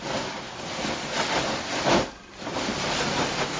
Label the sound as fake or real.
real